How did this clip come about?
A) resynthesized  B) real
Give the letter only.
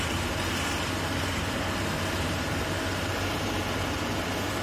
B